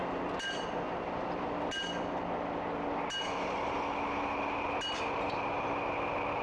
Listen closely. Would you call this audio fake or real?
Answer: real